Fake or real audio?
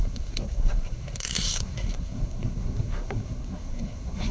fake